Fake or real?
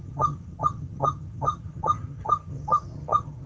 fake